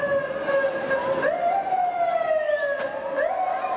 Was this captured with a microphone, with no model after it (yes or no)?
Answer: yes